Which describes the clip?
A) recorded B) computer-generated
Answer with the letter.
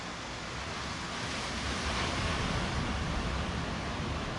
A